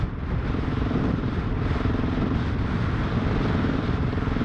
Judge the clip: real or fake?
real